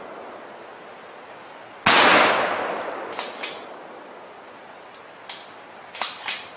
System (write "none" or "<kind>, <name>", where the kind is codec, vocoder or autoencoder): none